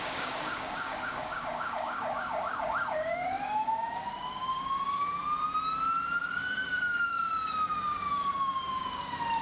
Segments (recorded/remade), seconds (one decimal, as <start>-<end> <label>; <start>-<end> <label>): 0.0-5.2 remade; 5.2-6.3 recorded; 6.3-9.4 remade